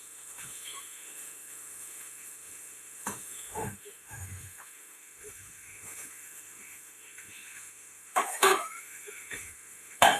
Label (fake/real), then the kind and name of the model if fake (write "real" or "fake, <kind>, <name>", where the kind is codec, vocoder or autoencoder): fake, autoencoder, DAC-VAE